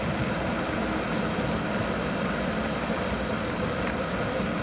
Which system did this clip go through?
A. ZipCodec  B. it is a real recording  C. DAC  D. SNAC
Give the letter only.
B